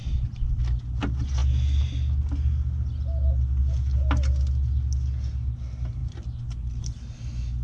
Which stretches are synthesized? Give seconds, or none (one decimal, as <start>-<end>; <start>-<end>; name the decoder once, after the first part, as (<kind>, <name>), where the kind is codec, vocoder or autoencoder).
none